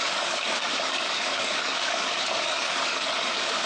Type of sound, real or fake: fake